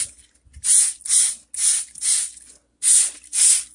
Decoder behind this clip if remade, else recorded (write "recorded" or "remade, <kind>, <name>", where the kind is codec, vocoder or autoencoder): recorded